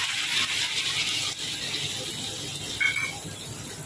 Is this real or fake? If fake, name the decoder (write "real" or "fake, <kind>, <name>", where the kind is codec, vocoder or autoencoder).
real